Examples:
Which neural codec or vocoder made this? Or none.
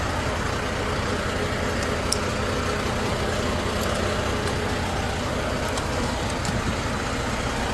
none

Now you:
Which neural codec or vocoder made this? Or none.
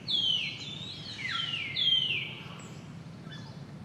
vocoder, BigVGAN v2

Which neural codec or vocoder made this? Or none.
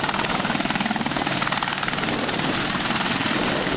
vocoder, BigVGAN v2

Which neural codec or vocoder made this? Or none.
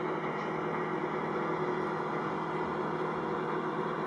none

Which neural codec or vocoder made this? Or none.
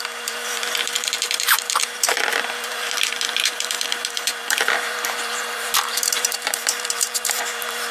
vocoder, BigVGAN v2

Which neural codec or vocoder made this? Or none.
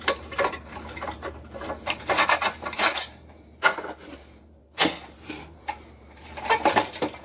vocoder, BigVGAN v2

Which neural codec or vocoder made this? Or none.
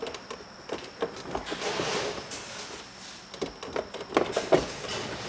none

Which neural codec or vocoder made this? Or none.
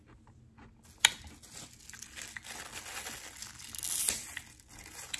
none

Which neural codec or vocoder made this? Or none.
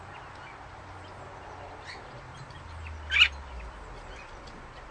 none